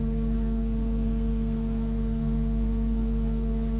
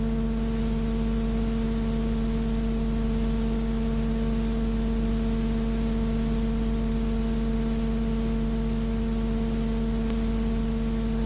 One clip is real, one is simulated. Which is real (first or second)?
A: second